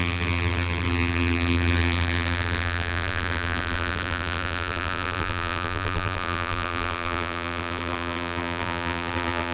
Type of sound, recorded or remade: remade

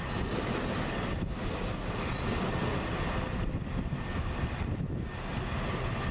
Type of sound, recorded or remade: recorded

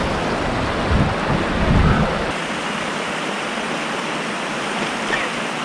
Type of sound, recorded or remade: recorded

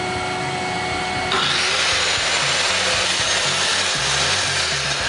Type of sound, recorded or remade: recorded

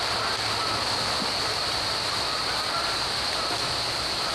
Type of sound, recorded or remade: recorded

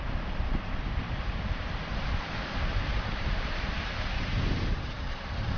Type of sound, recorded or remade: remade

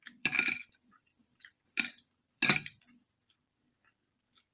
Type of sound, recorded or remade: remade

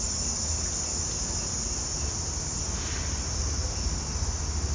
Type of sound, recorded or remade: recorded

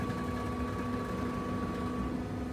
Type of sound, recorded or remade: recorded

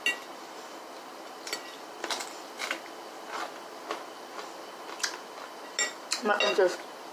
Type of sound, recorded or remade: recorded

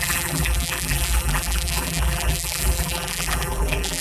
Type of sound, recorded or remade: remade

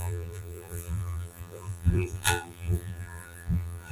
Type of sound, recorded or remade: remade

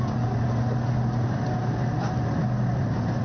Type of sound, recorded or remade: recorded